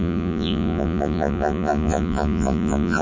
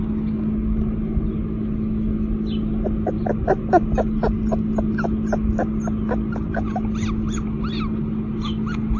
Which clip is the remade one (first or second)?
first